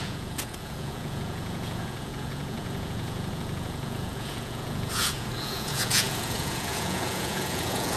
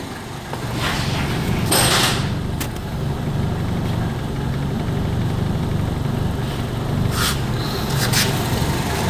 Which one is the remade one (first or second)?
first